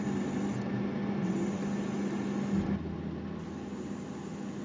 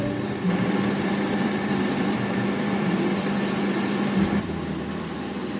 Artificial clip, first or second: second